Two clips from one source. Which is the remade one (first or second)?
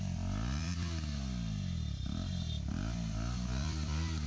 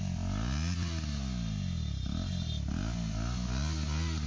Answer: first